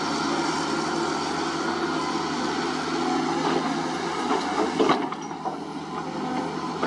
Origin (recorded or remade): recorded